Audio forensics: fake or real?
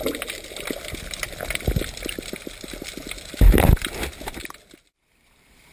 real